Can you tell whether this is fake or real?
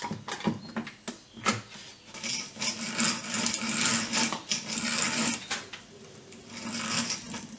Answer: real